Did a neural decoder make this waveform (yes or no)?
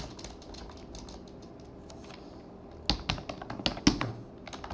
no